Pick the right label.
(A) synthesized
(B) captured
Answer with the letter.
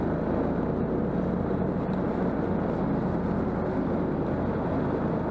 B